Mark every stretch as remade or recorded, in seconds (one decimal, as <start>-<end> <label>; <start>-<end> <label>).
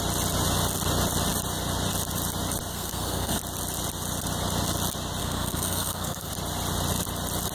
0.0-2.7 recorded; 2.7-3.4 remade; 3.4-5.2 recorded; 5.2-6.3 remade; 6.3-7.5 recorded